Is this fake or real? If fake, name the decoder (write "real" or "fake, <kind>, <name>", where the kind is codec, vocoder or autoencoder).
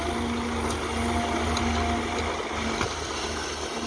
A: real